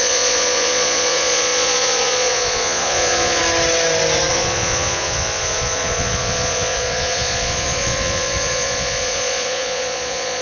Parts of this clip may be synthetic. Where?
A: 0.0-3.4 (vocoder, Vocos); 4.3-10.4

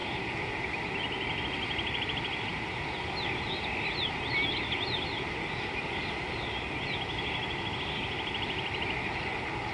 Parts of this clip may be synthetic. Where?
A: none

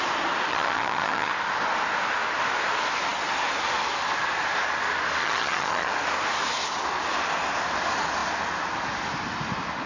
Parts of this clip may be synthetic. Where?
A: 0.5-1.3 (vocoder, HiFi-GAN); 5.2-5.9

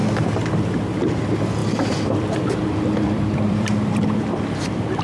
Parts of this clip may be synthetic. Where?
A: 0.0-1.2 (vocoder, BigVGAN v2); 1.6-4.6

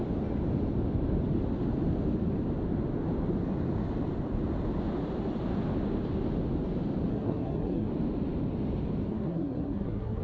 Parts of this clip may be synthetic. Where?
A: 7.1-7.9 (codec, SNAC); 9.1-10.2